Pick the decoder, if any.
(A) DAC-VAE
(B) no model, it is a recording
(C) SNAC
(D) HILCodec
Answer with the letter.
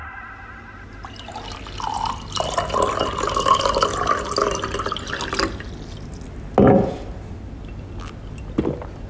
B